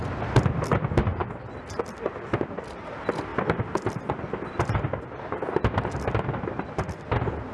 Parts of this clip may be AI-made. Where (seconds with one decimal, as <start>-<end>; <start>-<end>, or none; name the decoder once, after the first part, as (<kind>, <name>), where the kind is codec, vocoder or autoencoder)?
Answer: none